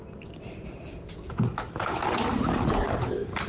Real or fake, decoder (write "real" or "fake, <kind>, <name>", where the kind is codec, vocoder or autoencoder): real